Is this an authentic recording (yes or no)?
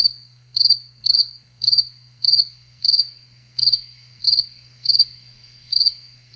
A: no